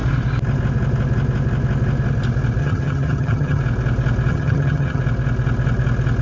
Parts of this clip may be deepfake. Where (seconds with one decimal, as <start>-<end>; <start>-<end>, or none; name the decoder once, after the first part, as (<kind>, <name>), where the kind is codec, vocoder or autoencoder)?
2.6-3.6 (vocoder, HiFi-GAN); 4.3-5.0